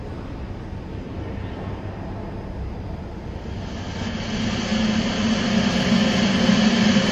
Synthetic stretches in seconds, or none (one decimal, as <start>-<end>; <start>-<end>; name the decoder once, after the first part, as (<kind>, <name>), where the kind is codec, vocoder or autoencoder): none

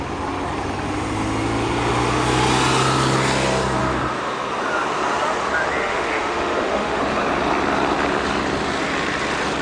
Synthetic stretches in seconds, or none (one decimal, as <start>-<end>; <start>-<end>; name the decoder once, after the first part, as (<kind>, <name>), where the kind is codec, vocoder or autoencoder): 5.8-7.0 (autoencoder, DAC-VAE)

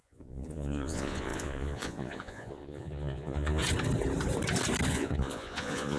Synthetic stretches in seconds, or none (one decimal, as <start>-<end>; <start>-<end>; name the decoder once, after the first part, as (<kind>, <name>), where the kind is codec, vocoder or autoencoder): 0.0-3.6 (vocoder, Vocos); 4.9-6.0

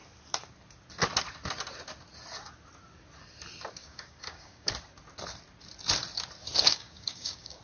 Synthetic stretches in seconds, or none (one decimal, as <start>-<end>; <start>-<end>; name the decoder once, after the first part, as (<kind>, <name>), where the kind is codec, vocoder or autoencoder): 3.8-4.7 (codec, DAC); 6.6-7.6